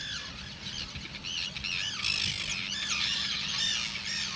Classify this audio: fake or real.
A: real